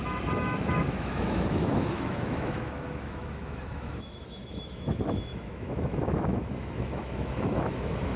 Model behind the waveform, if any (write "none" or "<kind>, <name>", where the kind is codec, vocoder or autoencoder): autoencoder, DAC-VAE